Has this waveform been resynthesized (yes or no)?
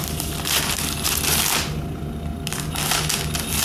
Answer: no